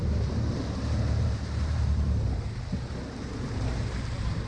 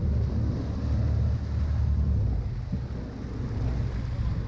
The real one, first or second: second